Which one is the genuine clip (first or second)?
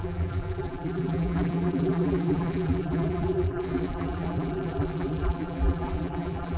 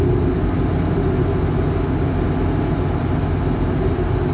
second